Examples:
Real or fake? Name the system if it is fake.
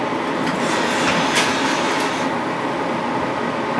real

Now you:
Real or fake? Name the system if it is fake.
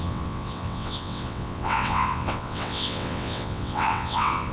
fake, vocoder, WaveNeXt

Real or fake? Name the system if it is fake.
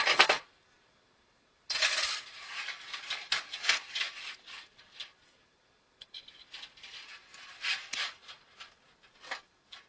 real